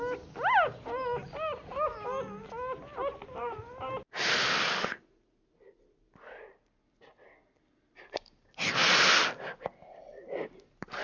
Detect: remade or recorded recorded